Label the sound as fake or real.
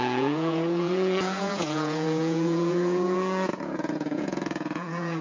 fake